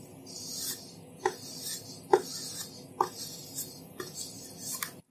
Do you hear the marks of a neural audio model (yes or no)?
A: no